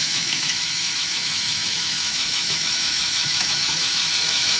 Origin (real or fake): fake